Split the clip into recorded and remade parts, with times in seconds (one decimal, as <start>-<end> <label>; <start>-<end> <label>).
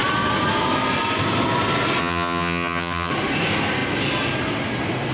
0.0-2.0 recorded; 2.0-3.1 remade; 3.1-5.1 recorded